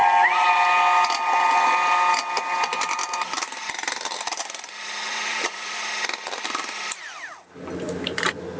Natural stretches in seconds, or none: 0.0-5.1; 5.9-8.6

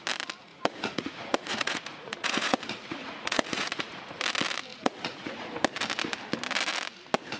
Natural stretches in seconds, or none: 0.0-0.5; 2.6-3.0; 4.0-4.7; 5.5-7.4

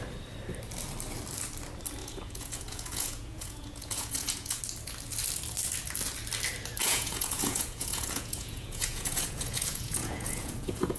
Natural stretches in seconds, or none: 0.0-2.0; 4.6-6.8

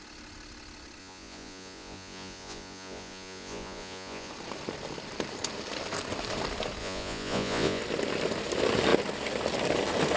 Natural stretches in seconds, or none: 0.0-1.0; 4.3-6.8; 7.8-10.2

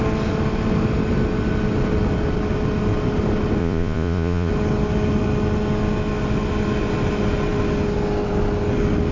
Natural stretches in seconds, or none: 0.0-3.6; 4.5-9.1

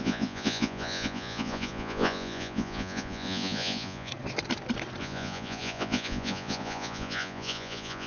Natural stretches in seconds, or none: 4.1-5.0